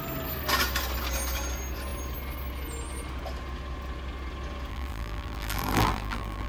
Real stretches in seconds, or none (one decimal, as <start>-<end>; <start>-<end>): 0.0-4.7